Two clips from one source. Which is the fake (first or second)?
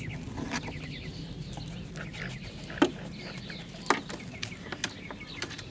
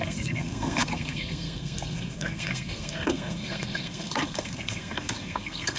second